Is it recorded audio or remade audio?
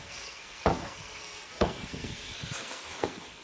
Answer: remade